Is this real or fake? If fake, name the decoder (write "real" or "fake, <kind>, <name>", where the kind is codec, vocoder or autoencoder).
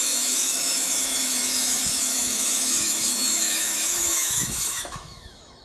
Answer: fake, autoencoder, DAC-VAE